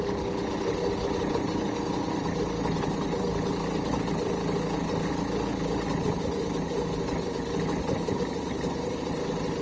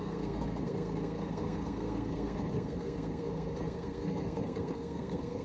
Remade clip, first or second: second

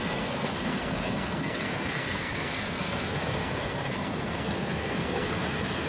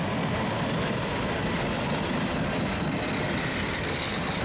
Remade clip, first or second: first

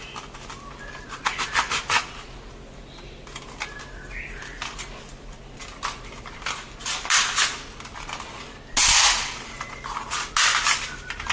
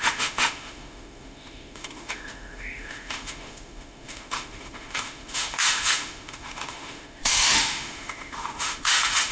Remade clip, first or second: second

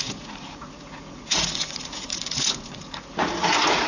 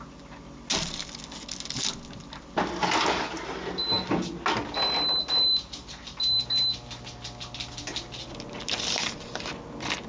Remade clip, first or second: first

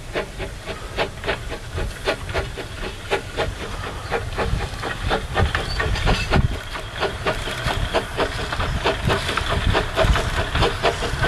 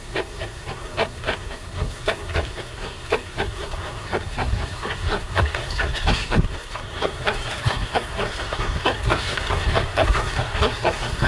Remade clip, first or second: second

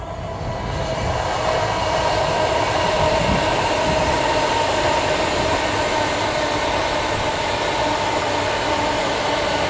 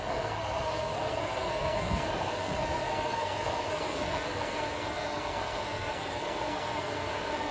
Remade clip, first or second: second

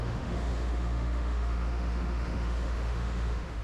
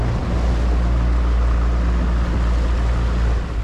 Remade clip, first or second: first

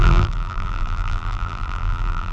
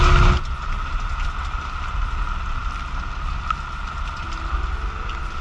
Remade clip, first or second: first